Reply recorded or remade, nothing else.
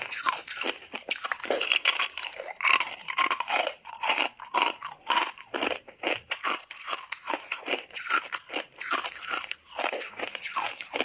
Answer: remade